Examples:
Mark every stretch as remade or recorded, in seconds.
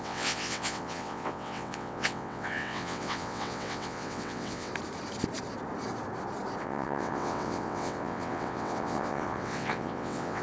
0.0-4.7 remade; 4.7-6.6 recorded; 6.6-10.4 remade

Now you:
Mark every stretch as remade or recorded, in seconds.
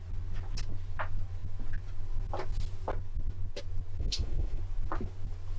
0.0-4.0 recorded; 4.0-4.6 remade; 4.6-5.6 recorded